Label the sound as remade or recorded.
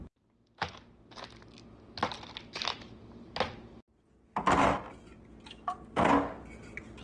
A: recorded